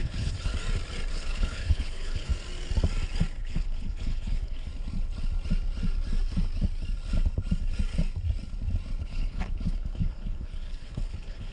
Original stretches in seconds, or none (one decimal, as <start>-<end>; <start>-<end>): 0.5-1.1; 2.3-3.4; 4.7-9.0